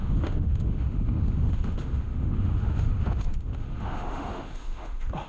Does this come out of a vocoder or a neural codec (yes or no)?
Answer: yes